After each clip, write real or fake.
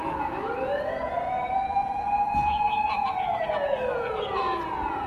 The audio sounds fake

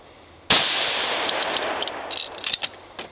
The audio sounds real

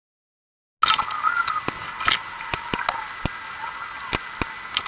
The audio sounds real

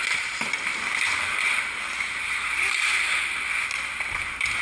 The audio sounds real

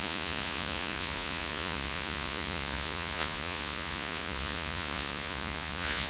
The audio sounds fake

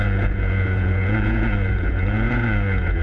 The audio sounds fake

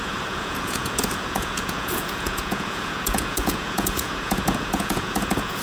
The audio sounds fake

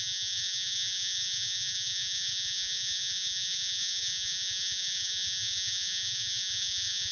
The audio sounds fake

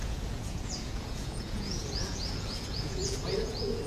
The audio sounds fake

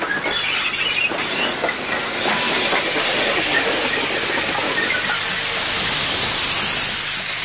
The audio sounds real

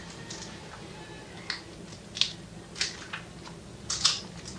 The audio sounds real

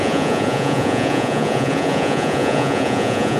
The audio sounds fake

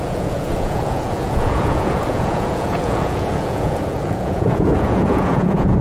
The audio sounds fake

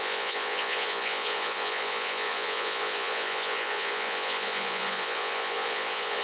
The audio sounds fake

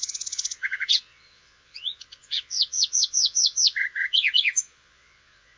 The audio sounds fake